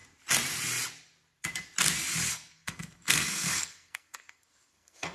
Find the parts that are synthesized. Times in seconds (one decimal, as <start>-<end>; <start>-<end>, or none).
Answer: 2.3-5.1